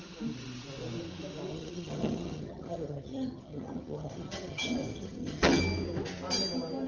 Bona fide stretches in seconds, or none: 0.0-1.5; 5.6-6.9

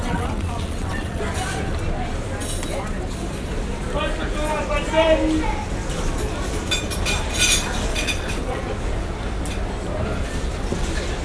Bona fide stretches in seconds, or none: 1.2-7.9; 8.6-11.2

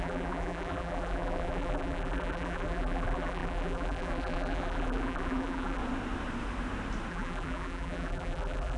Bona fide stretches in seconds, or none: 5.8-7.1

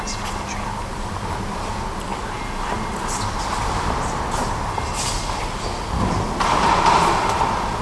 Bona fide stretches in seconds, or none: 0.0-0.9; 1.7-7.8

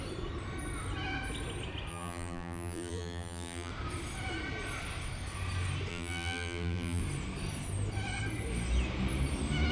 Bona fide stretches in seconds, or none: 0.0-1.9; 3.7-5.9; 7.0-9.7

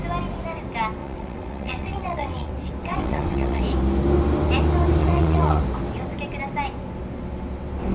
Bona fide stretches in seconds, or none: 0.0-1.0; 2.5-2.9; 3.6-5.0; 5.6-7.9

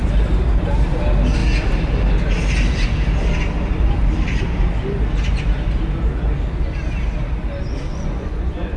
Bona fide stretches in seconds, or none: 0.0-7.9